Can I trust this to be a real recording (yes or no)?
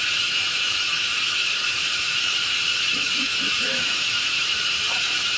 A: no